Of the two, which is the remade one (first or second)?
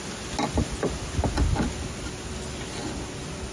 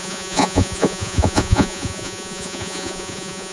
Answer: second